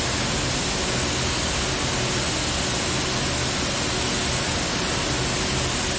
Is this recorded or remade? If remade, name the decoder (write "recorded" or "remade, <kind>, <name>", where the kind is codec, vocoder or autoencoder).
recorded